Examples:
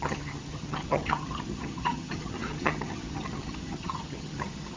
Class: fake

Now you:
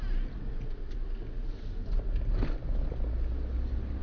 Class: real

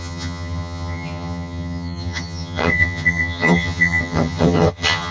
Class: fake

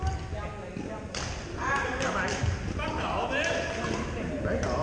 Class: real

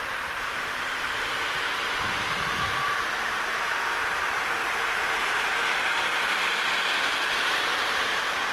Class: fake